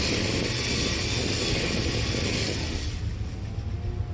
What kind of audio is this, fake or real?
real